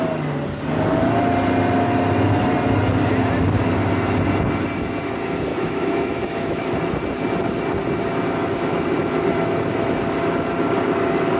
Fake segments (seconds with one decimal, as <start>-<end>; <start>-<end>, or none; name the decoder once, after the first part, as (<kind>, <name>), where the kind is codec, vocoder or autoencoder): 5.5-6.7 (autoencoder, DAC-VAE)